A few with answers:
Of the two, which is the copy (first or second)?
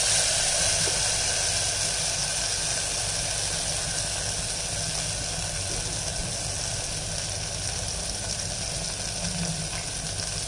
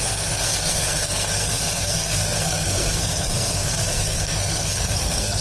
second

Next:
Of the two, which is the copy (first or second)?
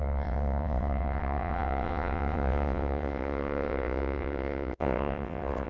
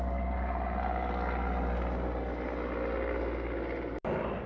first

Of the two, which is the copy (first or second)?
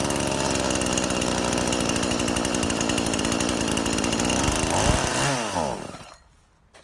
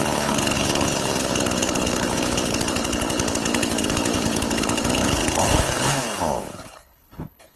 second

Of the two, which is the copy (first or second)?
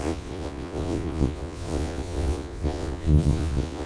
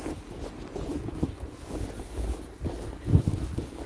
first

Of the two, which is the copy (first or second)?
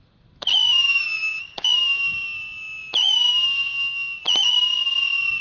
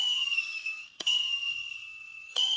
second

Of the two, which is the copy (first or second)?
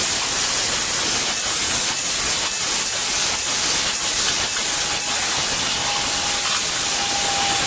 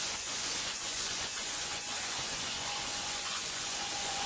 second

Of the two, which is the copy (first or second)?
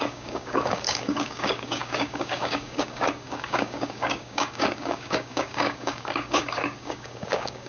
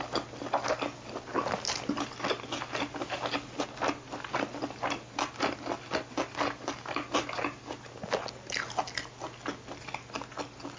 first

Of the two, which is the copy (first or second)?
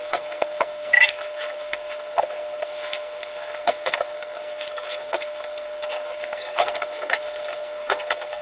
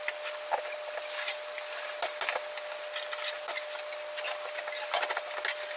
first